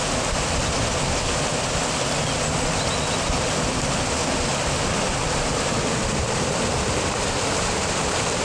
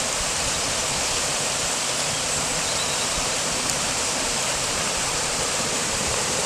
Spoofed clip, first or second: second